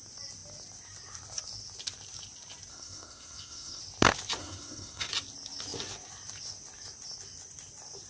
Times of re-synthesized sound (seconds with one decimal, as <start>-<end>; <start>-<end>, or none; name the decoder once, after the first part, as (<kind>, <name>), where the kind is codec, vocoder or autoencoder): 2.7-3.8 (codec, SNAC); 4.4-5.1